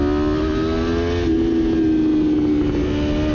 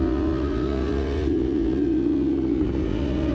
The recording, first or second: first